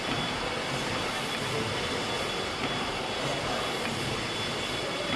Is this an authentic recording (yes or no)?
yes